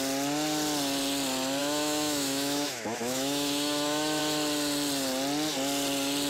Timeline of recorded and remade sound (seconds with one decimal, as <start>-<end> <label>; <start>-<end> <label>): 0.0-1.6 recorded; 1.6-4.2 remade; 4.2-6.3 recorded